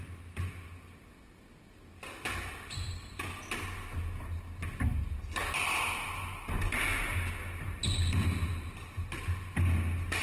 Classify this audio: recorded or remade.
recorded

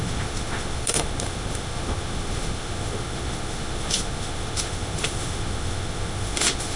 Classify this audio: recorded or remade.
remade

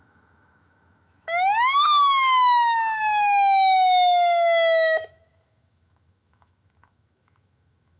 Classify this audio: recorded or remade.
remade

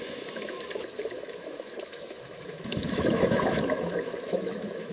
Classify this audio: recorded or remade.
remade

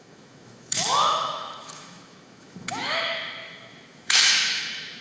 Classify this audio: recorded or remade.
remade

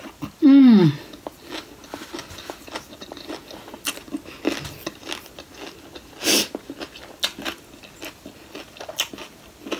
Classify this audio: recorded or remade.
recorded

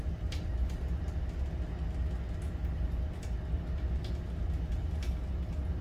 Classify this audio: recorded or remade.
recorded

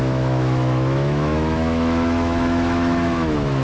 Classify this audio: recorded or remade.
remade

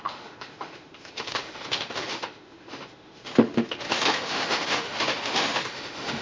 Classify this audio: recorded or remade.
remade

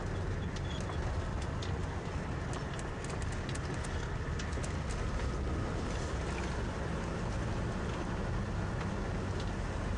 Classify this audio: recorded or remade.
recorded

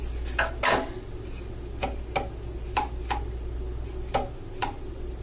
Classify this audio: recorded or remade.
recorded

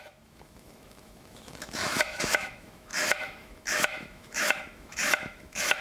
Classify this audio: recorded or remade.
remade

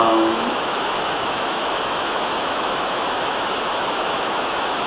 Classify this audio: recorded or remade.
remade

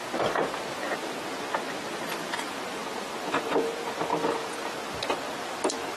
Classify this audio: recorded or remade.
recorded